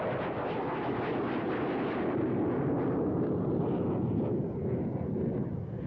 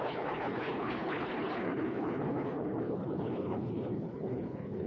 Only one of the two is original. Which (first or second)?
first